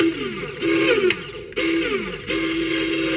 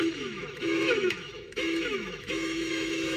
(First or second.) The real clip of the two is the first